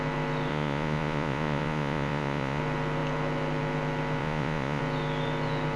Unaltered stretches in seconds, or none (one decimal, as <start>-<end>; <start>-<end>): 0.0-0.5; 2.6-4.2; 4.8-5.8